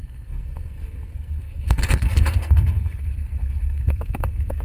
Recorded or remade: remade